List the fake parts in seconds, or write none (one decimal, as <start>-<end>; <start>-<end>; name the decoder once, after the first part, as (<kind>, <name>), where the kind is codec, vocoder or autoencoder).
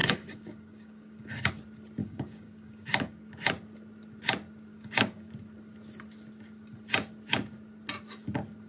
0.0-1.5 (codec, DAC); 2.0-3.3; 4.7-5.3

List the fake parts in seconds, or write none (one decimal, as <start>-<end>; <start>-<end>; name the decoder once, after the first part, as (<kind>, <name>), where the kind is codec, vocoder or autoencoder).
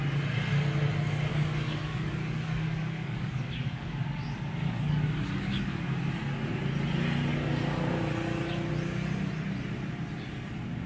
1.3-6.0 (codec, DAC)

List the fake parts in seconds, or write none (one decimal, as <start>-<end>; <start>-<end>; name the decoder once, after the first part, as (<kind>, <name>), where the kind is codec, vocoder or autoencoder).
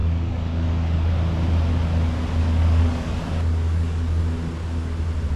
0.0-1.1 (codec, DAC); 2.4-4.2